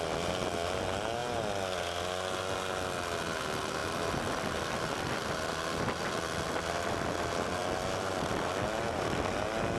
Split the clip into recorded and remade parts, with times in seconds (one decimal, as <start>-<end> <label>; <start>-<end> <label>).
0.0-3.8 recorded; 3.8-6.1 remade; 6.1-9.8 recorded